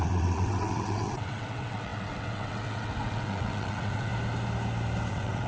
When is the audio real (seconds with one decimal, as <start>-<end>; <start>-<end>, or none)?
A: 4.1-5.1